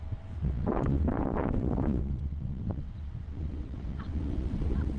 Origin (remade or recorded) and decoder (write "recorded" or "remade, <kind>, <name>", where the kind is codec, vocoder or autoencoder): remade, vocoder, WaveNeXt